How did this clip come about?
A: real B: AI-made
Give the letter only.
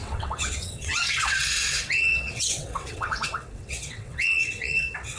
B